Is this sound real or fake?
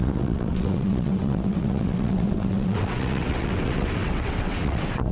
fake